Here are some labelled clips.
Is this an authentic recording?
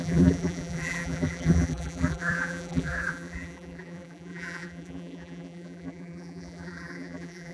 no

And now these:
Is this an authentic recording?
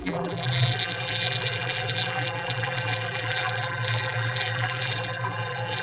no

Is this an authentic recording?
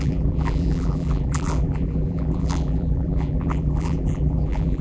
no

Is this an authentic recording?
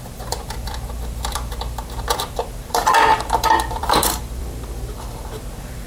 no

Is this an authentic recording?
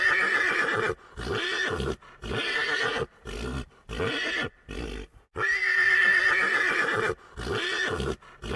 yes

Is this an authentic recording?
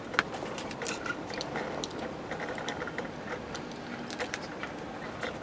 no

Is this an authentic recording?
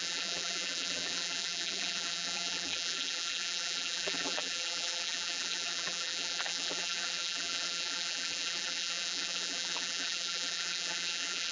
no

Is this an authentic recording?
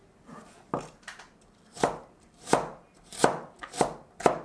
no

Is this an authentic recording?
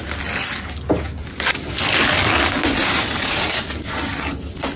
yes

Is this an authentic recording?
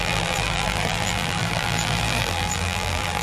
no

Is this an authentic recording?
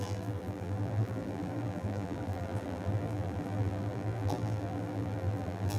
no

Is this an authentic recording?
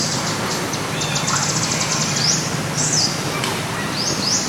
yes